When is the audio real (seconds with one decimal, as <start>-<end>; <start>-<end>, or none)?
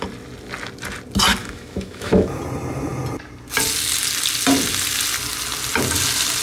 0.0-1.4; 2.4-6.4